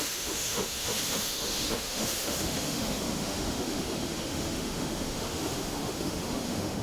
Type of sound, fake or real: fake